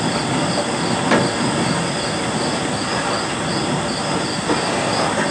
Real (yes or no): yes